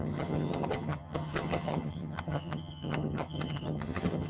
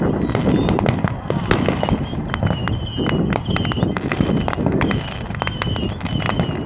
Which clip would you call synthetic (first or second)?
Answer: first